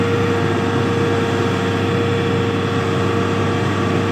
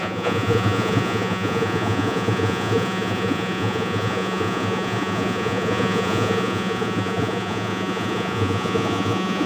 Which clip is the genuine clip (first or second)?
first